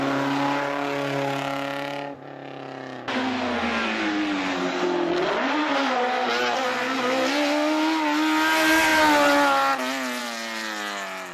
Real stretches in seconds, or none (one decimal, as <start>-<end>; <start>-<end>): 0.0-11.3